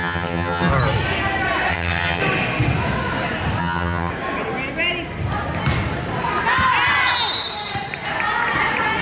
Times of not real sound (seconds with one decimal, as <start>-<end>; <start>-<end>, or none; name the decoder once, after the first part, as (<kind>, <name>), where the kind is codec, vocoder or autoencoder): 0.0-0.7 (vocoder, HiFi-GAN); 1.7-2.2; 3.6-4.1